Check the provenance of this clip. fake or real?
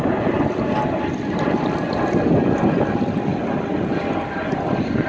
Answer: real